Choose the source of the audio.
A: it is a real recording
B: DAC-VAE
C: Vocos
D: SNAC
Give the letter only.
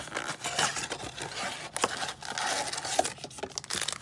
A